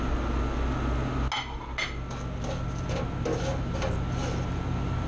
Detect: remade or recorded recorded